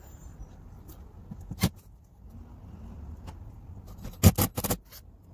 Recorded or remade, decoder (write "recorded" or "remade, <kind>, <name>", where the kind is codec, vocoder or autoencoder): recorded